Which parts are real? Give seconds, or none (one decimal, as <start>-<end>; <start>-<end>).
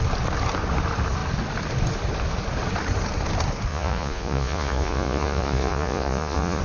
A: 0.0-3.7